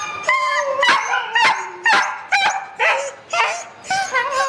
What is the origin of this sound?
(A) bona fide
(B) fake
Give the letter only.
A